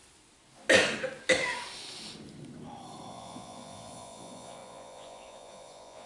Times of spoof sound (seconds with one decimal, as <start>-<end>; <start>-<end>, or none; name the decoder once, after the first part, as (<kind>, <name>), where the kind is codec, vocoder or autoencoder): 3.1-6.1 (vocoder, Vocos)